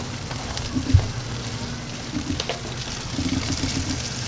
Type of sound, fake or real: real